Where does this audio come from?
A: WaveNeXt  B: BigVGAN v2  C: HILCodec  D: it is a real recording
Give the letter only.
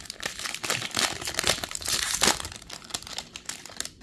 D